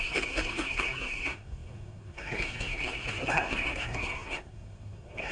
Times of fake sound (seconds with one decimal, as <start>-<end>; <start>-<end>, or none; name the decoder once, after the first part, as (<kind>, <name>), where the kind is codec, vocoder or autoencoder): 0.0-5.3 (codec, SNAC)